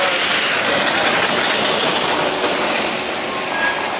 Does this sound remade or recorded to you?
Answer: recorded